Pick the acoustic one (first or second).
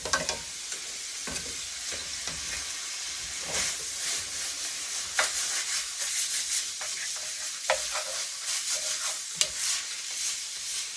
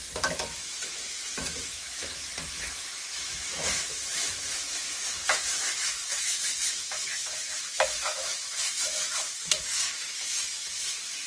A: first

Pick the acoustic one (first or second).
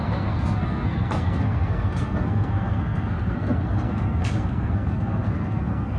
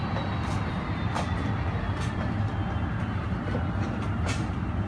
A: second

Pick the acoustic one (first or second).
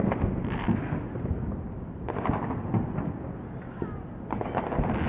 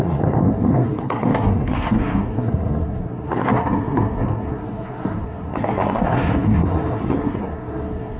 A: first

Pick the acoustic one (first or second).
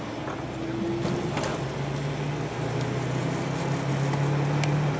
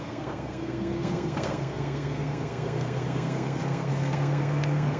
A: first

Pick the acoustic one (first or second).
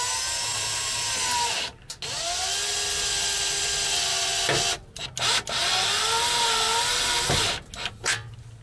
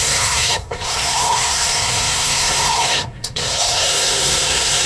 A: first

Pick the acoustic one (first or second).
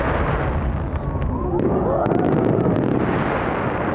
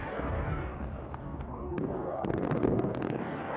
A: first